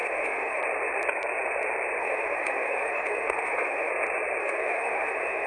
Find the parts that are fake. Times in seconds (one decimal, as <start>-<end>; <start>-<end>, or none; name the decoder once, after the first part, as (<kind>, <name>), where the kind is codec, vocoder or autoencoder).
0.0-0.6 (autoencoder, DAC-VAE); 2.0-3.9; 4.4-5.5